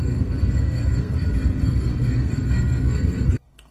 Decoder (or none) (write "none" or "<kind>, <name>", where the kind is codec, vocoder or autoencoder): codec, SNAC